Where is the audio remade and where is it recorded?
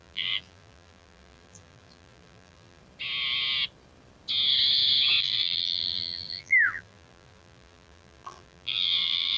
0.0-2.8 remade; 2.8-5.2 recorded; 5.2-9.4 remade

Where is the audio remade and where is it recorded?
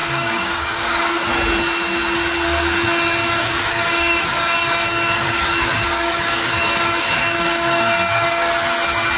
0.0-1.0 remade; 1.0-3.2 recorded; 3.2-8.5 remade; 8.5-9.2 recorded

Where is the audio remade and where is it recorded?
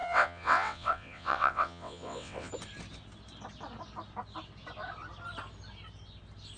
0.0-2.5 remade; 2.5-6.6 recorded